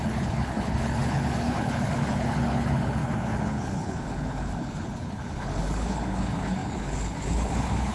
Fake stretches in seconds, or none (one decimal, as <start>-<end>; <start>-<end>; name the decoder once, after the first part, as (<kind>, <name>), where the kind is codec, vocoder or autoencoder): 0.0-7.9 (codec, HILCodec)